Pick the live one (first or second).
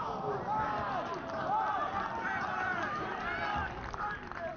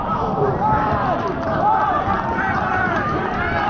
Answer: first